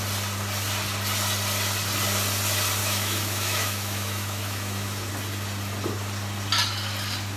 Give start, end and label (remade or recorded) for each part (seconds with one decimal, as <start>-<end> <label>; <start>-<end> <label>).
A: 0.0-2.8 recorded; 2.8-5.1 remade; 5.1-7.4 recorded